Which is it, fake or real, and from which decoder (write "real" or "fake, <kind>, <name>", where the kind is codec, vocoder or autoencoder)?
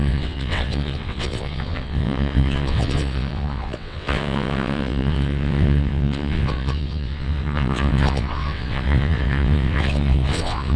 fake, vocoder, WaveNeXt